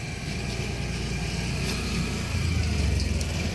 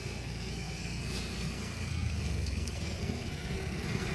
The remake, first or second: second